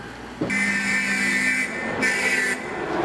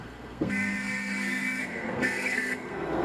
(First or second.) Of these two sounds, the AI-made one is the second